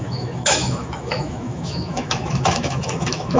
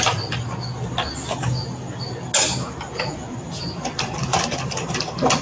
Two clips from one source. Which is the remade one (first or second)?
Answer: first